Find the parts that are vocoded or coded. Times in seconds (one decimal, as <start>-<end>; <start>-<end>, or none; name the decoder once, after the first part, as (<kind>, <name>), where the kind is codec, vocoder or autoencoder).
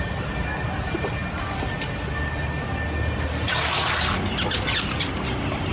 none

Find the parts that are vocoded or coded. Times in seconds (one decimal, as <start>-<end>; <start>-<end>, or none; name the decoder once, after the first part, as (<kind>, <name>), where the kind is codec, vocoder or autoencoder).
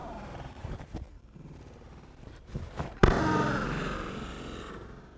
0.0-3.0 (vocoder, BigVGAN v2)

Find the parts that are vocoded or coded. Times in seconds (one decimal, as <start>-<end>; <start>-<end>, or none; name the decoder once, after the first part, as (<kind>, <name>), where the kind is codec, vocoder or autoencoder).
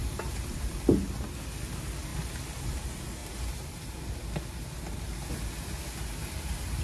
3.2-4.0 (vocoder, BigVGAN v2)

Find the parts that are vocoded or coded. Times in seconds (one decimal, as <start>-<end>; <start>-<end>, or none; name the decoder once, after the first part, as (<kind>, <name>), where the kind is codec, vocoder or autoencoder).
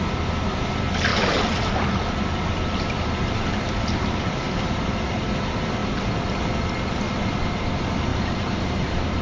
1.1-5.2 (vocoder, BigVGAN v2); 8.1-9.2